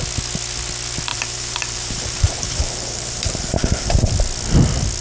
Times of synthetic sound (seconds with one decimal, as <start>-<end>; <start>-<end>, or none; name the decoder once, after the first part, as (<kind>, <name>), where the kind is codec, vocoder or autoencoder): 1.1-4.1 (vocoder, BigVGAN v2)